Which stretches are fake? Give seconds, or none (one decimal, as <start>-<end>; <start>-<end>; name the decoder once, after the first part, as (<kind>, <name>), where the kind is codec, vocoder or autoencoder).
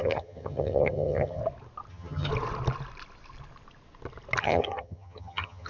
0.0-1.4 (vocoder, HiFi-GAN); 1.9-2.3; 4.4-5.7